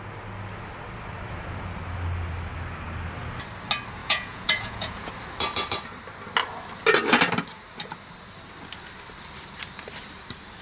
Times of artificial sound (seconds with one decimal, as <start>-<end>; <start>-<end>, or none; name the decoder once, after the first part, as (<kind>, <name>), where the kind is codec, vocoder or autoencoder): 4.0-5.1 (vocoder, Vocos)

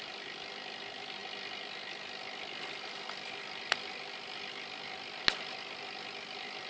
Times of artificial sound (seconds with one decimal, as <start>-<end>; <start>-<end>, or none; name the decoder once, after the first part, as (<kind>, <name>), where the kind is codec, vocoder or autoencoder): none